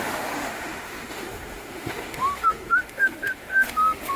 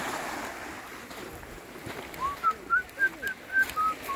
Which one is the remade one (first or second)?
first